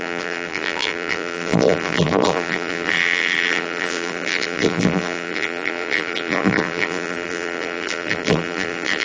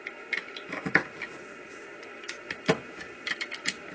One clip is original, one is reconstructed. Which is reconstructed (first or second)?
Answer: first